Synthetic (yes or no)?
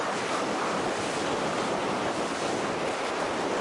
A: no